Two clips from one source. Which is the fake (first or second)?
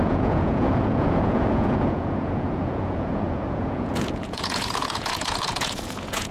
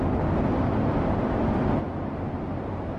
first